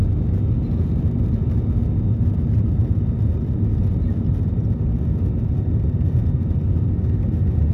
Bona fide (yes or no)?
yes